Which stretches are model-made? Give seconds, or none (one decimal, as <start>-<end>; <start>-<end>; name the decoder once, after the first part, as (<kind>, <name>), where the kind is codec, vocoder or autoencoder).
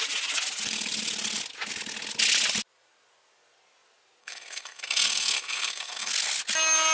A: 4.2-6.1 (codec, SNAC)